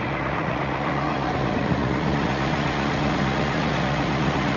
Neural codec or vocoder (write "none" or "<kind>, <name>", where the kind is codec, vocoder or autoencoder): vocoder, Vocos